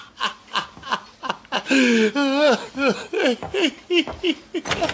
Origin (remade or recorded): recorded